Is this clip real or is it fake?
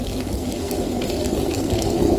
fake